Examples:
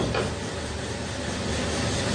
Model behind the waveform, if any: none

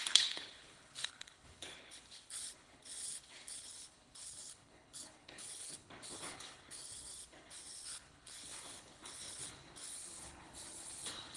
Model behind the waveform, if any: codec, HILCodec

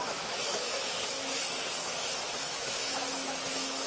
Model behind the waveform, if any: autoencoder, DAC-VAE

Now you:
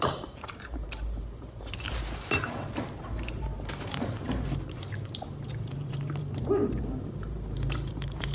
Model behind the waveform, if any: vocoder, BigVGAN v2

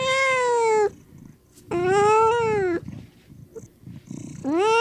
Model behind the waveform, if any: none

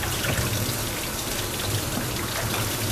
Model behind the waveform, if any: vocoder, BigVGAN v2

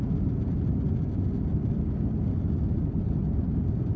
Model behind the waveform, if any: none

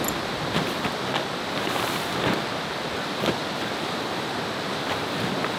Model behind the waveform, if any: none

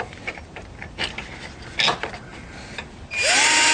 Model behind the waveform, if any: none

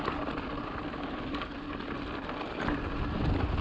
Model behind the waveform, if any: none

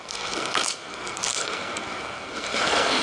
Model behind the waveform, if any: codec, SNAC